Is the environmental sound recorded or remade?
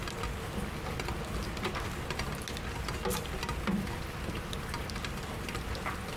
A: recorded